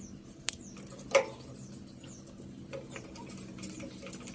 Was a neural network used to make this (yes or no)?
no